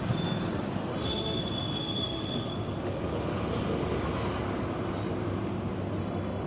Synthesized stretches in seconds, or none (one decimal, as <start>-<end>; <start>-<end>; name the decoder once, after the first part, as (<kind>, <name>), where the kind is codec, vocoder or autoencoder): 0.9-1.4 (autoencoder, DAC-VAE); 1.8-2.5; 6.0-6.5